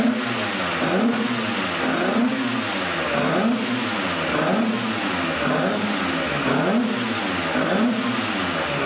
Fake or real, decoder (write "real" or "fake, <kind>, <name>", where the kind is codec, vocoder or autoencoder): real